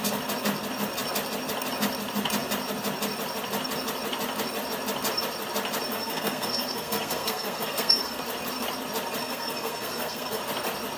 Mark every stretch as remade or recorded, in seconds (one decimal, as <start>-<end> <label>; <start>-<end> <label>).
0.0-5.9 recorded; 5.9-8.2 remade; 8.2-9.2 recorded; 9.2-10.4 remade; 10.4-11.0 recorded